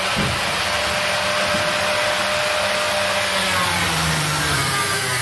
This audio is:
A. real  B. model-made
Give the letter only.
B